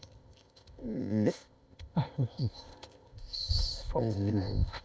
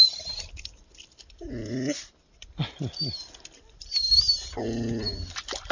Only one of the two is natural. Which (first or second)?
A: second